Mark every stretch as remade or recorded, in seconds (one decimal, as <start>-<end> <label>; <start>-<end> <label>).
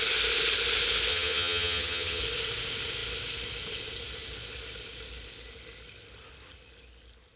0.0-1.1 recorded; 1.1-2.2 remade; 2.2-7.4 recorded